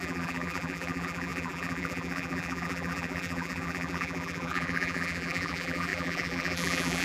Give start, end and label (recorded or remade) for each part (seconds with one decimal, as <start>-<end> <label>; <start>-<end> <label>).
0.0-7.0 remade